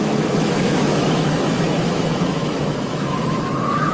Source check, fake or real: fake